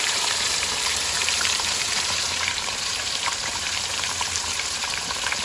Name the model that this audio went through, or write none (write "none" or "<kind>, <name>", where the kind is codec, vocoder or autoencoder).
vocoder, BigVGAN v2